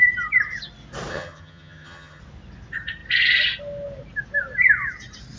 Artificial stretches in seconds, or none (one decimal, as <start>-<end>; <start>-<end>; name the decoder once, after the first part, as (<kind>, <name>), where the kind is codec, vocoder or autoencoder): 1.1-2.2 (vocoder, HiFi-GAN)